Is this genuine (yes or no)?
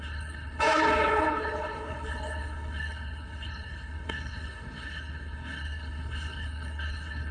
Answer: no